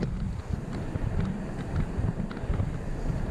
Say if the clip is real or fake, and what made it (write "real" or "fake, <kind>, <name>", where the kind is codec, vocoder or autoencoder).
real